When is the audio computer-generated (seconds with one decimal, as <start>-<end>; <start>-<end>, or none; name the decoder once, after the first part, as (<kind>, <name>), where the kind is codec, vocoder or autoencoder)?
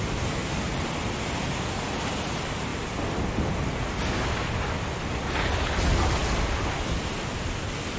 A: none